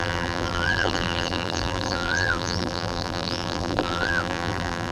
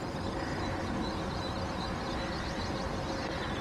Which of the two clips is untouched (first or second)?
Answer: second